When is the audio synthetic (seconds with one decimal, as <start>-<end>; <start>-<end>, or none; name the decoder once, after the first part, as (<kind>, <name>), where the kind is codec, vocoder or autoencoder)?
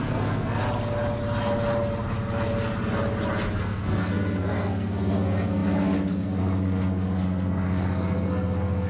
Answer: 0.0-0.6 (codec, SNAC); 3.6-8.9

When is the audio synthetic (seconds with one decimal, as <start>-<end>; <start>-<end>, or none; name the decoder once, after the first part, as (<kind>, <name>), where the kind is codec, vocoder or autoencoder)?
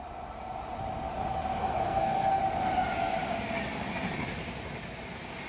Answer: 1.6-2.4 (codec, SNAC)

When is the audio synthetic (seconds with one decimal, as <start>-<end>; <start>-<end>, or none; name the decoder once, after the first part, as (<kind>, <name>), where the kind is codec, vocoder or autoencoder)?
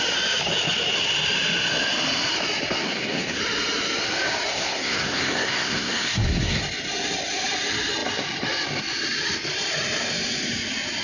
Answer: 2.8-3.4 (codec, SNAC); 4.5-6.6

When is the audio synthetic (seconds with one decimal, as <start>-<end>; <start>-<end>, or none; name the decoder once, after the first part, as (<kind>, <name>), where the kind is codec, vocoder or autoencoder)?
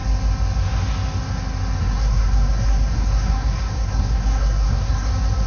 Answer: 1.8-5.1 (codec, SNAC)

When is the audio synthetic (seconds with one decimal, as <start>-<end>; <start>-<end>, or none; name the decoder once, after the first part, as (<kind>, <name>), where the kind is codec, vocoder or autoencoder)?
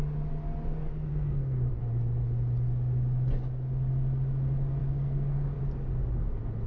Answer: 1.1-1.7 (codec, SNAC); 4.8-5.6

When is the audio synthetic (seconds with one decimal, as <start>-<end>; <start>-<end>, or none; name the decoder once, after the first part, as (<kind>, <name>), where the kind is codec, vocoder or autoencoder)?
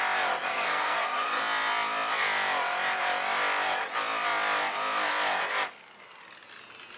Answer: 0.5-1.4 (codec, SNAC)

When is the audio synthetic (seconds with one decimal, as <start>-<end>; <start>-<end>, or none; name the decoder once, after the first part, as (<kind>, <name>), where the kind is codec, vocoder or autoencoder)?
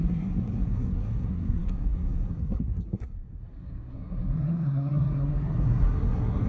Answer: 0.0-6.5 (codec, SNAC)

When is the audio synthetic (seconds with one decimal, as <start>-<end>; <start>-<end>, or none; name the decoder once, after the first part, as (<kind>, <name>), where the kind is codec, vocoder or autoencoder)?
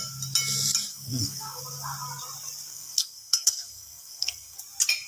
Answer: 0.9-1.6 (codec, SNAC); 2.7-4.6